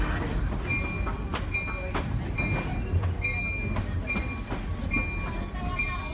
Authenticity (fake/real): real